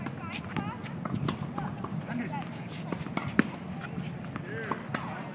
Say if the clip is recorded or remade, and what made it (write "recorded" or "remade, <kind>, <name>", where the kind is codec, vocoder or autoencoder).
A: recorded